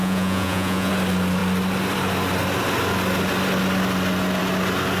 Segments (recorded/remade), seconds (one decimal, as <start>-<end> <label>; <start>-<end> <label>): 0.0-0.9 remade; 0.9-5.0 recorded